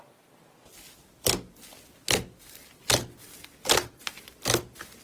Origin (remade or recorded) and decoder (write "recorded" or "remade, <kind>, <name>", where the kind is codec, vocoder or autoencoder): recorded